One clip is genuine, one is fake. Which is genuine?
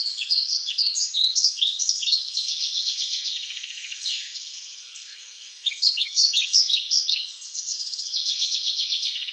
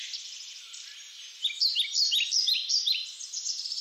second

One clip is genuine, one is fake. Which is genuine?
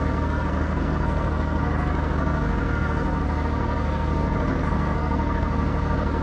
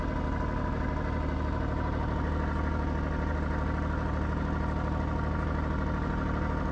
second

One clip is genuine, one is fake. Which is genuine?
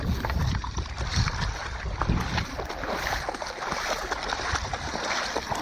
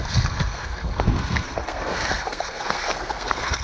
first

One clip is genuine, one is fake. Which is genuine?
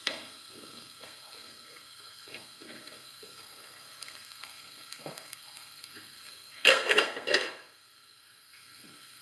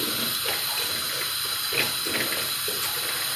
second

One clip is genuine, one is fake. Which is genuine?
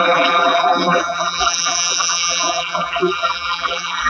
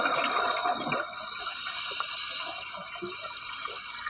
second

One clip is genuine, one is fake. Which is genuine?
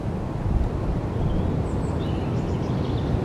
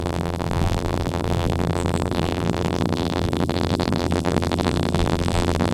first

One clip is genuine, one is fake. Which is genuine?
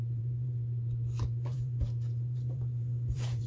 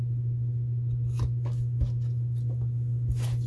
second